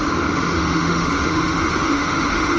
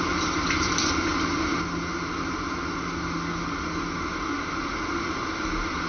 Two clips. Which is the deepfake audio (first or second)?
first